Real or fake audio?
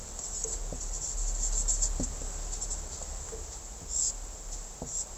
real